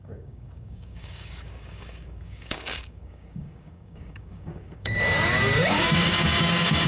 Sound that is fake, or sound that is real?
fake